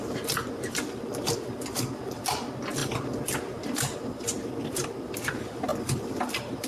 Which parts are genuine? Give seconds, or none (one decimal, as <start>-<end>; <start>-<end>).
0.0-2.8; 4.9-5.7